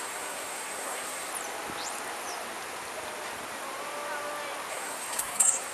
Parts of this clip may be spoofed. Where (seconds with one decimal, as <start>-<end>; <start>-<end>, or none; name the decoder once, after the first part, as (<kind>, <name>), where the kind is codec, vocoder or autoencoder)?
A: 0.0-1.3 (codec, SNAC); 4.7-5.7